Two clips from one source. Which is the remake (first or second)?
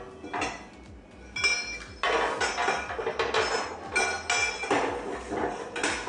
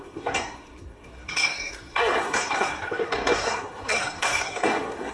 second